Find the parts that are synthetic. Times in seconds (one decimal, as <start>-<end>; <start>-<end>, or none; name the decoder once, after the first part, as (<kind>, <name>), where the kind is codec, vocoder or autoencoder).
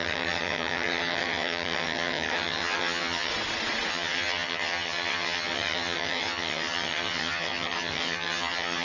0.0-3.3 (vocoder, HiFi-GAN); 3.9-8.8